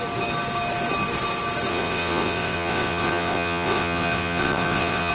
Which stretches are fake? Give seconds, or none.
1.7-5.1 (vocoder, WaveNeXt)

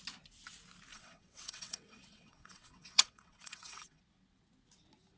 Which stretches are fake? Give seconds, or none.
0.9-4.0 (vocoder, WaveNeXt)

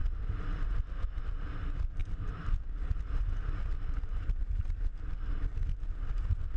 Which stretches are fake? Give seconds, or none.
none

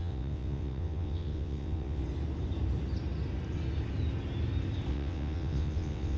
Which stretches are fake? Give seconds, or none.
0.0-2.0 (vocoder, WaveNeXt); 4.9-6.2

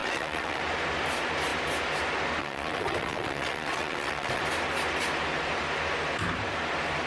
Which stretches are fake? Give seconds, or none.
0.0-0.6 (vocoder, WaveNeXt); 2.4-4.4

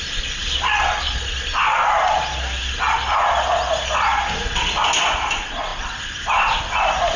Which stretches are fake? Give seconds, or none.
none

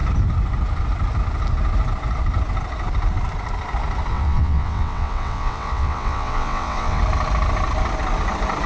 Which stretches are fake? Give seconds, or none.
4.1-7.0 (vocoder, WaveNeXt)

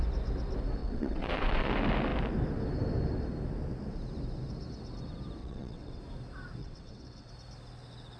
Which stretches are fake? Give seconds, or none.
0.8-1.7 (vocoder, WaveNeXt); 5.4-6.0; 6.6-7.3